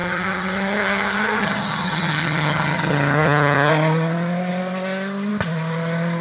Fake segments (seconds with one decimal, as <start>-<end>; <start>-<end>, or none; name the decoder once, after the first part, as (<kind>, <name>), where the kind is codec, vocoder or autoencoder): 0.0-3.7 (vocoder, HiFi-GAN)